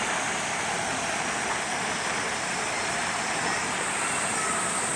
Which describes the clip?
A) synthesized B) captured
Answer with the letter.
B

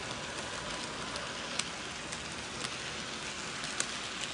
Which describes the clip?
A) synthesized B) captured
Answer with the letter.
B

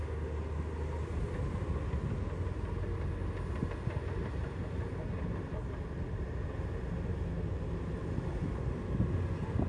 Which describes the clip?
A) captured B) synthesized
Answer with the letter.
A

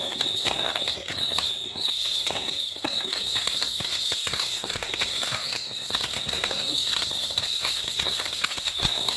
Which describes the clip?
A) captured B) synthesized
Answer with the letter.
B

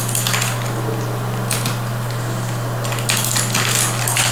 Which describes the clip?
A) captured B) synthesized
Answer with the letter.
A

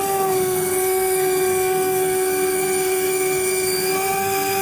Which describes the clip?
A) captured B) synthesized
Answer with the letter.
B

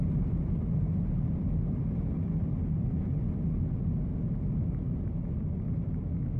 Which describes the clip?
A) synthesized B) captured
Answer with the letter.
B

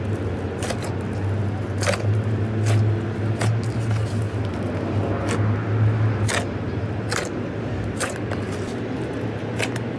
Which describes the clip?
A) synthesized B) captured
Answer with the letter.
B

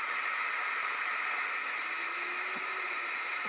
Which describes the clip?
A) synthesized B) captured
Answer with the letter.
B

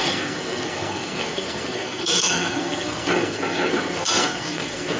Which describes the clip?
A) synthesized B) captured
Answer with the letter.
A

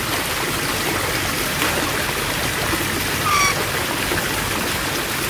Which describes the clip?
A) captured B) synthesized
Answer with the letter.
A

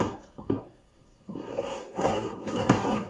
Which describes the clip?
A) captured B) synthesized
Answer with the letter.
B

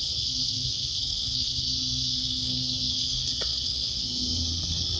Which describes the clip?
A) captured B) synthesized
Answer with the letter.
B